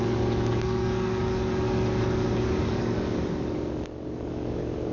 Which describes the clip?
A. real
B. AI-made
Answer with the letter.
B